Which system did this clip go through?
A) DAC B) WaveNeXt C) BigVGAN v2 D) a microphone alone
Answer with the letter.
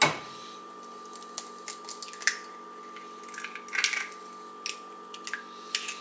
D